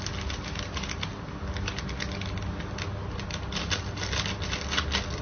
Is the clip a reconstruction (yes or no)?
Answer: no